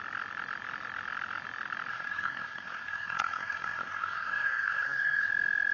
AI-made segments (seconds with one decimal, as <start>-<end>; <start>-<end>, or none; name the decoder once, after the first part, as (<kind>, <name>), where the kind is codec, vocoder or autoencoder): 1.9-5.3 (codec, SNAC)